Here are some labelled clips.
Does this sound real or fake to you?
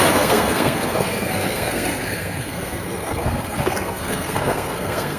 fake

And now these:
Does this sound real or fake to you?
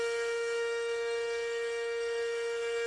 fake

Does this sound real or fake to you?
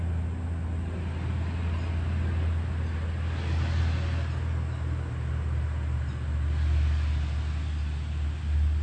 real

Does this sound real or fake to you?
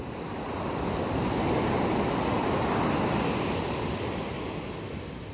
real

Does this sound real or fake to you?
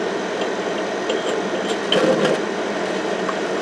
real